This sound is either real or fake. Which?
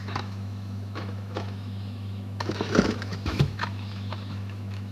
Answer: fake